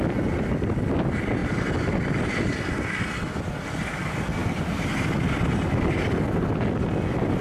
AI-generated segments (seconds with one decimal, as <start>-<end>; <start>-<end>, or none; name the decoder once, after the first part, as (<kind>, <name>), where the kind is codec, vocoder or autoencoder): none